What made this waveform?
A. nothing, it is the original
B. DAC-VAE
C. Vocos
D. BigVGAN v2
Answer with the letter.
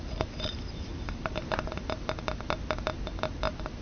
D